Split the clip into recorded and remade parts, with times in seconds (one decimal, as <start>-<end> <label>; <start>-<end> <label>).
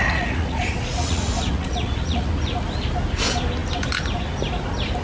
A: 0.0-2.3 remade; 2.3-5.0 recorded